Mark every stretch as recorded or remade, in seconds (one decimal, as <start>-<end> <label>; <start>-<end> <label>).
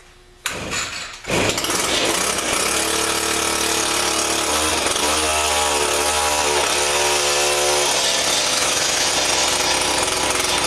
0.0-8.5 recorded; 8.5-9.1 remade; 9.1-10.7 recorded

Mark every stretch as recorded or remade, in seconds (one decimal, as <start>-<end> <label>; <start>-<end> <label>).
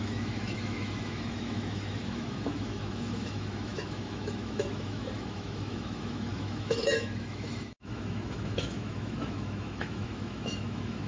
0.0-11.1 remade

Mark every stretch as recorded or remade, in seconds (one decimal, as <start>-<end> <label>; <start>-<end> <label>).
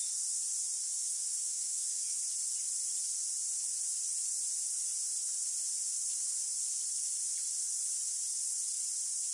0.0-1.0 recorded; 1.0-2.2 remade; 2.2-9.3 recorded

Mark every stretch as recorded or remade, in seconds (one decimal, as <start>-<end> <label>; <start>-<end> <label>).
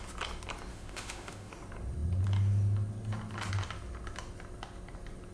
0.0-0.7 recorded; 0.7-1.5 remade; 1.5-5.3 recorded